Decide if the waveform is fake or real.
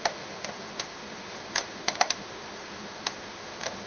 fake